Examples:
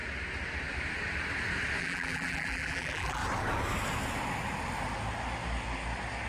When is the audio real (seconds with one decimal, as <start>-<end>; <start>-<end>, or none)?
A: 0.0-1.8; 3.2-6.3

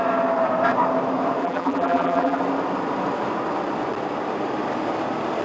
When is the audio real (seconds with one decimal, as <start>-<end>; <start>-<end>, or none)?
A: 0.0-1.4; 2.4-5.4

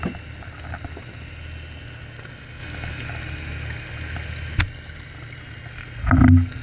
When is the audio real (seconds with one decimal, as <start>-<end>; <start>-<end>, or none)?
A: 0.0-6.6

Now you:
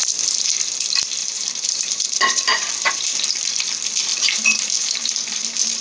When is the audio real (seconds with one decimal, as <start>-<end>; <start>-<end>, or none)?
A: 0.0-1.2; 3.6-4.1

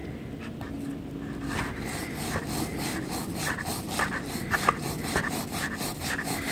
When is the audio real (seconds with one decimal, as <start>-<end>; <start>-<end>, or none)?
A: 0.0-1.4

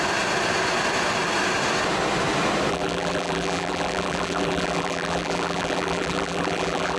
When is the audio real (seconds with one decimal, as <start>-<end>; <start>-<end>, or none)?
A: 0.0-2.7